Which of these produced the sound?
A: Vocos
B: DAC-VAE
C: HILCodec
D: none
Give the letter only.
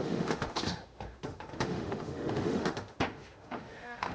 B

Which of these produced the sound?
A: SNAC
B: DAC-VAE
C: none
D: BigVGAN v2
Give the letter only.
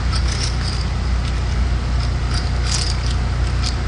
C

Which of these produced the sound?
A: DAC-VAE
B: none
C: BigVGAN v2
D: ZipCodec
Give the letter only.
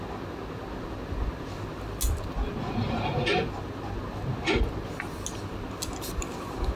B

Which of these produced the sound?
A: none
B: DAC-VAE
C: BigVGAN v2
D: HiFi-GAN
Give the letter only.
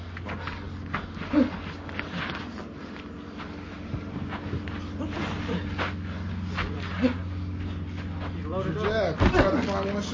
A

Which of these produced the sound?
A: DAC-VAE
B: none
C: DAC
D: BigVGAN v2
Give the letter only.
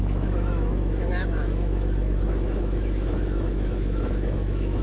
A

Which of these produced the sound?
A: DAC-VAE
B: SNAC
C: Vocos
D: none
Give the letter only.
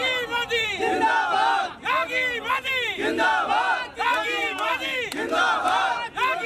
D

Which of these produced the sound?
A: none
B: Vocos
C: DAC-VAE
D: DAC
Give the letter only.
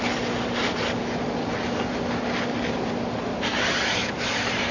A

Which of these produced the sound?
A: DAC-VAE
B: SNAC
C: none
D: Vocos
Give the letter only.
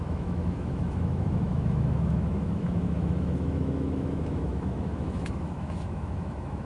A